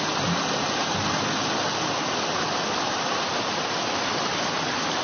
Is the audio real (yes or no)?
yes